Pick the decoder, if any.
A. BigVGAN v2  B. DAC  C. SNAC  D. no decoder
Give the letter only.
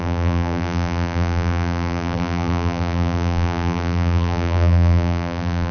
A